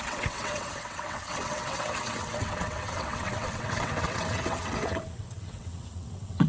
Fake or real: fake